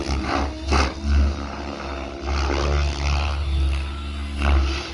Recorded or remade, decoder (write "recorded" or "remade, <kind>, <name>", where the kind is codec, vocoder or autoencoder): recorded